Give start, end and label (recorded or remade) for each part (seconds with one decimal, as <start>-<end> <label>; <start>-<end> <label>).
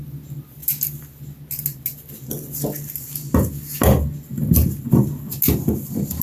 0.0-6.2 recorded